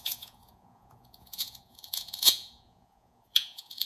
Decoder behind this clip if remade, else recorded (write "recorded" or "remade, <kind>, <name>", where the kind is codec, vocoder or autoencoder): remade, vocoder, Vocos